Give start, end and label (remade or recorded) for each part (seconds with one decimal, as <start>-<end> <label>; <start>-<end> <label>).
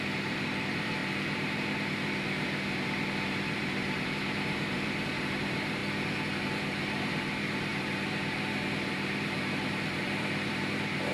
0.0-5.8 remade; 5.8-6.4 recorded; 6.4-11.1 remade